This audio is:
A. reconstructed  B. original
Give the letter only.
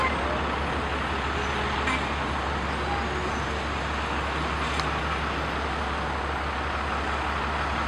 B